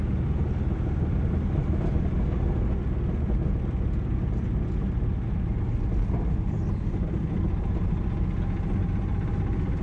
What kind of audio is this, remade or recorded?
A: recorded